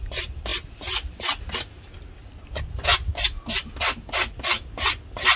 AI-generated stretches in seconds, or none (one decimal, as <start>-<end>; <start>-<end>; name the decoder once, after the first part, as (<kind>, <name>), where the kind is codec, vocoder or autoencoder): none